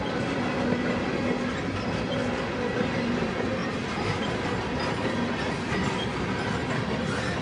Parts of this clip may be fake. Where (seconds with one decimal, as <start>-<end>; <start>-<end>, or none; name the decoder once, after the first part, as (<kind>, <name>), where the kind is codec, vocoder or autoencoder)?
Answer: 3.6-4.7 (vocoder, BigVGAN v2)

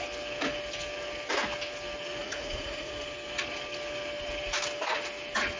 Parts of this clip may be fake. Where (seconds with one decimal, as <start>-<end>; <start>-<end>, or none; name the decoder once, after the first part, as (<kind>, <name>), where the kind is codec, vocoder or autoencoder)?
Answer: 2.2-2.9 (vocoder, Vocos)